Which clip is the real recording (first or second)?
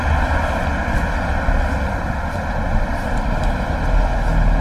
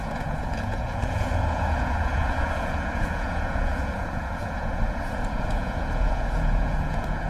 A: first